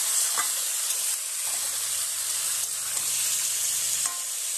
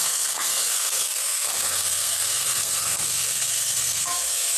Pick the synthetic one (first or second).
second